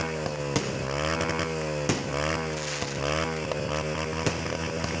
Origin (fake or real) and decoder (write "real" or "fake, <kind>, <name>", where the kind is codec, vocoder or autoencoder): real